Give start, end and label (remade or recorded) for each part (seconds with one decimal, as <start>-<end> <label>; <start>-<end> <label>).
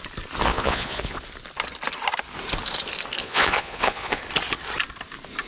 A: 0.0-0.5 recorded; 0.5-1.2 remade; 1.2-3.2 recorded; 3.2-4.2 remade; 4.2-5.5 recorded